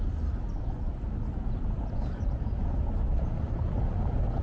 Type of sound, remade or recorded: recorded